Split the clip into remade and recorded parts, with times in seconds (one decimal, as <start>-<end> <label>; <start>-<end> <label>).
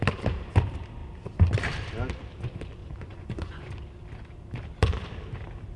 0.0-2.8 recorded; 2.8-3.7 remade; 3.7-5.8 recorded